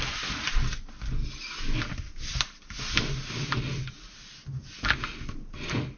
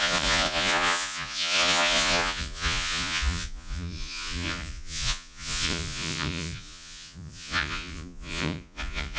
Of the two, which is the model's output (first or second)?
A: second